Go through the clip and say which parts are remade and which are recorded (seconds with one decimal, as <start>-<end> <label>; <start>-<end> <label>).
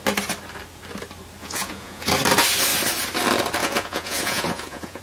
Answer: 0.0-1.4 recorded; 1.4-2.1 remade; 2.1-3.6 recorded; 3.6-5.0 remade